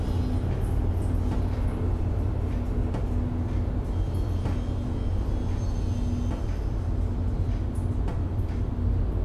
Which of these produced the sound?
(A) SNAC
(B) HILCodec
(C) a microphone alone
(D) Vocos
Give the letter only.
C